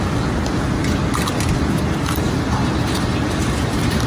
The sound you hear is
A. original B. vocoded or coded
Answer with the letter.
A